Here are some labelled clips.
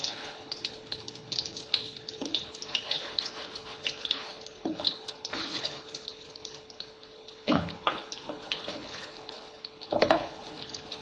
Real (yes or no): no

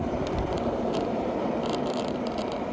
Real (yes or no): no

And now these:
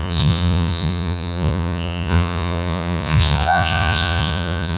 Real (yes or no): no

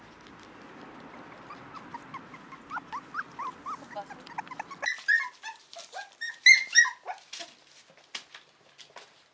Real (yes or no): yes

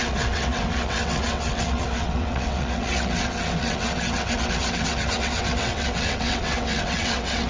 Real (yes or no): no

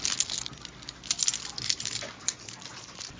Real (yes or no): yes